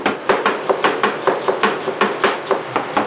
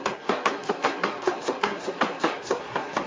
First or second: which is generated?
second